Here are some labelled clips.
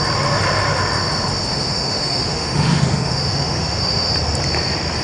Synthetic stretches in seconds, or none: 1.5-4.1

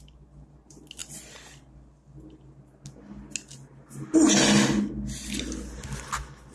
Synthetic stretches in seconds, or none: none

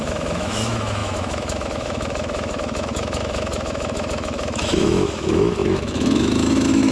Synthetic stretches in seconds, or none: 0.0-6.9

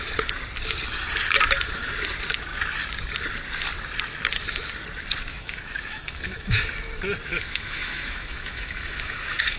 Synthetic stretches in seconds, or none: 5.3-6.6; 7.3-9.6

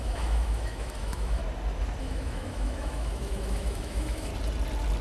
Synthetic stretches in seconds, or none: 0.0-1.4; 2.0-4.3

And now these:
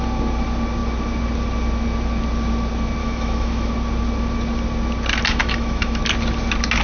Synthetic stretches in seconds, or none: 3.0-3.7; 5.4-6.0